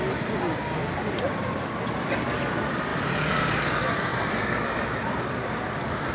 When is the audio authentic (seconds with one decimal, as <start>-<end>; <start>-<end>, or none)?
0.0-2.9; 3.4-4.1; 5.4-6.1